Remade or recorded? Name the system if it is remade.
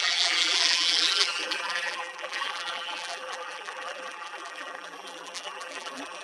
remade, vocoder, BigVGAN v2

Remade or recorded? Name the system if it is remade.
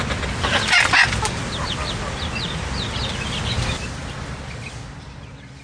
recorded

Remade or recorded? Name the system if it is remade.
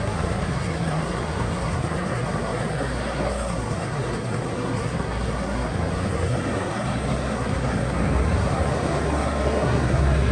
remade, codec, SNAC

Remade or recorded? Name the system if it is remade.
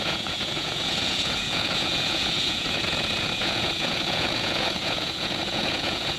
remade, vocoder, Vocos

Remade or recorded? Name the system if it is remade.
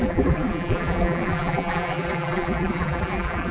remade, vocoder, BigVGAN v2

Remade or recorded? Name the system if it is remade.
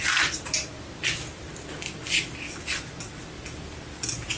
recorded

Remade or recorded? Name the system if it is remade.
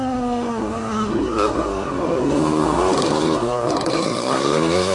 remade, codec, SNAC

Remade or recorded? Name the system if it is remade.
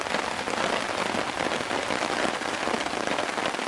recorded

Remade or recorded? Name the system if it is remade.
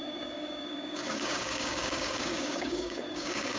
remade, codec, DAC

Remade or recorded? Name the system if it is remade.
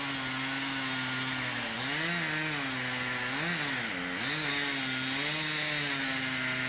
recorded